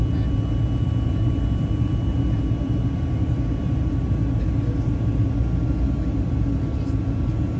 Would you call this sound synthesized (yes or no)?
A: no